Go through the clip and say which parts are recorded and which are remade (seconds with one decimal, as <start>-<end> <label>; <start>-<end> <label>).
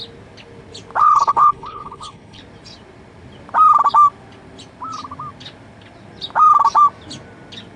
0.0-1.0 recorded; 1.0-2.4 remade; 2.4-7.8 recorded